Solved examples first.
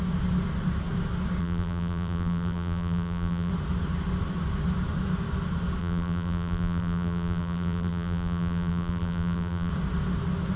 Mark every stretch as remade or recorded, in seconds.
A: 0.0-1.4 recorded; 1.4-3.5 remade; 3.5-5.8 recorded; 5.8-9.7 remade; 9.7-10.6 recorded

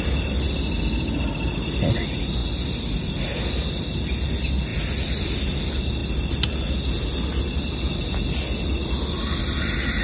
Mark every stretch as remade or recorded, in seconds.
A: 0.0-10.0 recorded

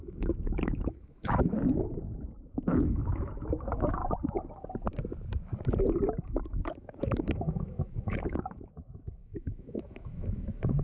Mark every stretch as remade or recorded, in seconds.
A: 0.0-4.0 remade; 4.0-6.2 recorded; 6.2-10.8 remade

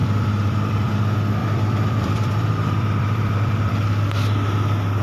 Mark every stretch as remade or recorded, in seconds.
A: 0.0-0.9 remade; 0.9-1.4 recorded; 1.4-3.7 remade; 3.7-5.0 recorded

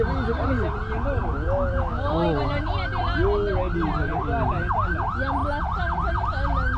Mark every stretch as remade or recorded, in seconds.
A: 0.0-6.8 recorded

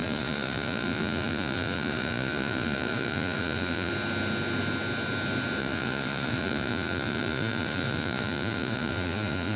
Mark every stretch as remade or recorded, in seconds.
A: 0.0-3.9 remade; 3.9-5.6 recorded; 5.6-9.6 remade

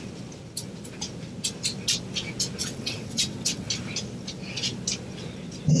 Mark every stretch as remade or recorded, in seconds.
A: 0.0-2.6 recorded; 2.6-3.7 remade; 3.7-5.8 recorded